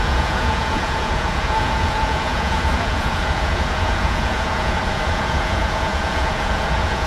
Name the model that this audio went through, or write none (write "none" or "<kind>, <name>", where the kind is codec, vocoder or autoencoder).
vocoder, Vocos